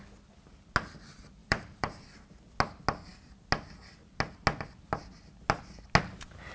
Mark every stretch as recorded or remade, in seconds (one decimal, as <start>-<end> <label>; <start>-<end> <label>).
0.0-1.4 recorded; 1.4-2.0 remade; 2.0-6.5 recorded